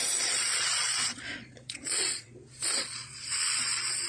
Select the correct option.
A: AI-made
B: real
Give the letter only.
A